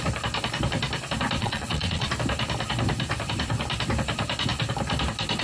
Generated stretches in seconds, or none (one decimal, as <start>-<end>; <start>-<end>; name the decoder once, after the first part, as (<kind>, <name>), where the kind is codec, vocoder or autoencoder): 1.4-2.1 (vocoder, Vocos)